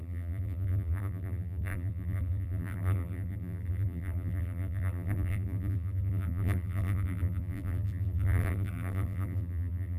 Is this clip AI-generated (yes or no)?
yes